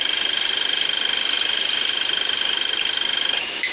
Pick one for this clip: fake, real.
real